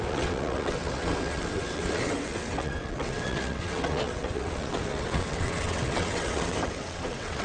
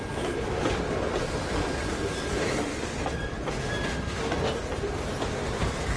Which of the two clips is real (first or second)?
second